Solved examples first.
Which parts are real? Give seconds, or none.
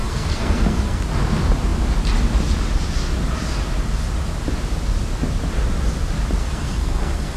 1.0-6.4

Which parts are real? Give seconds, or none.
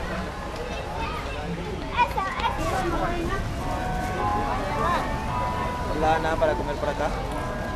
0.0-1.9; 3.3-7.8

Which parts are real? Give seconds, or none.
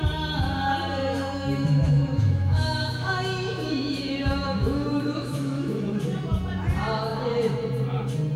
0.0-1.0; 6.0-8.4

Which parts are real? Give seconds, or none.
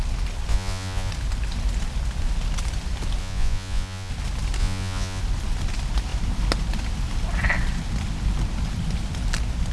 0.0-0.5; 1.1-3.2; 4.1-4.6; 5.2-9.7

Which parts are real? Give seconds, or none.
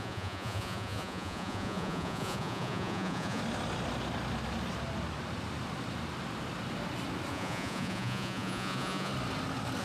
3.4-7.3; 9.1-9.8